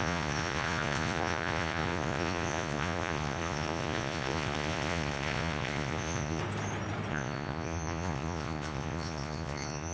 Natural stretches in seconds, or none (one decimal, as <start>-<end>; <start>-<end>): 6.4-7.1

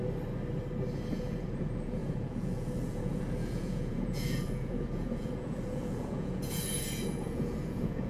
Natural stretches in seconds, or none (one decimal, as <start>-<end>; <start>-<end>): 0.0-1.1

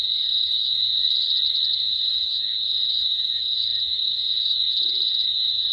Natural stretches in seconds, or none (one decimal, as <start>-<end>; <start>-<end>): 1.0-1.8

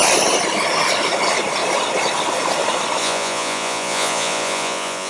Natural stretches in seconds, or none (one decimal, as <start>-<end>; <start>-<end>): 0.0-3.0

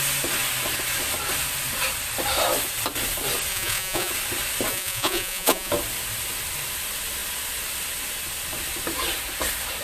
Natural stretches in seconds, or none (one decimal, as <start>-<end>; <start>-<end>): 0.0-3.5; 4.1-4.7; 5.7-9.8

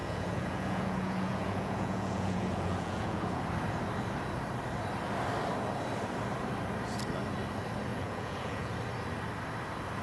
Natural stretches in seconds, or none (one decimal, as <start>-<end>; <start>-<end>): 3.4-7.9; 8.7-10.0